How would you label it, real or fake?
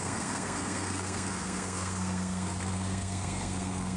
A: fake